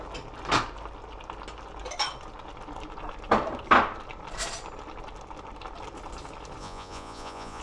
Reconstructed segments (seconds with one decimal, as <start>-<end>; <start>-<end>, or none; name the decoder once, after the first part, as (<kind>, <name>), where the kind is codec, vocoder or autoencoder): 6.6-7.6 (vocoder, Vocos)